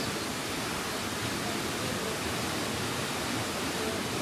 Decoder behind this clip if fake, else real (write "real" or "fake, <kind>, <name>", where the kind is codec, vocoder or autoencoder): real